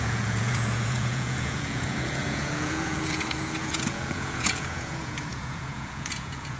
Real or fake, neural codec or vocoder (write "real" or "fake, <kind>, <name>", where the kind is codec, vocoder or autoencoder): fake, vocoder, Vocos